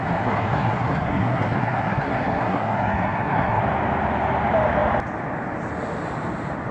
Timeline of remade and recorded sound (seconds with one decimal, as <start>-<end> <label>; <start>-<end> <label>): 0.0-3.6 remade; 3.6-6.7 recorded